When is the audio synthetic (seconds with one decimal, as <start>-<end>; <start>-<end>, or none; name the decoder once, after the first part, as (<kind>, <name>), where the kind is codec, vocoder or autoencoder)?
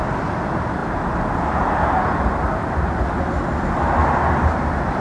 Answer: none